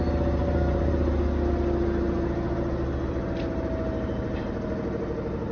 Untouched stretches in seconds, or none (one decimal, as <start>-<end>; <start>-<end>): 0.0-0.4; 0.9-5.5